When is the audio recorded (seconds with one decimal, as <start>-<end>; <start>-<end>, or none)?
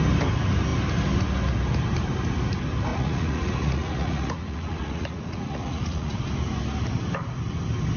0.0-2.9; 6.2-8.0